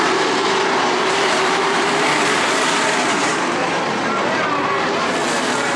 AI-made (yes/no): yes